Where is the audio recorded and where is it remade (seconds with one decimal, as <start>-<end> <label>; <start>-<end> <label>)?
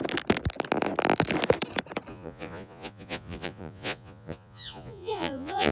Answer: 0.0-2.1 recorded; 2.1-5.7 remade